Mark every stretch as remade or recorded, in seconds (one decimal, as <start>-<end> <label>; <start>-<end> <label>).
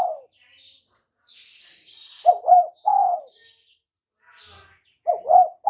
0.0-2.6 recorded; 2.6-3.2 remade; 3.2-5.7 recorded